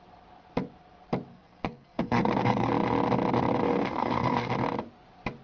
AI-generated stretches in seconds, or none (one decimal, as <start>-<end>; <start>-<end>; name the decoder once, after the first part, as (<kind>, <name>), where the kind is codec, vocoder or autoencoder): 1.3-2.7 (codec, SNAC); 3.6-4.5